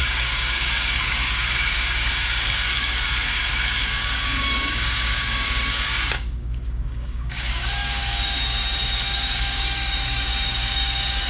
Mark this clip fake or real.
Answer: fake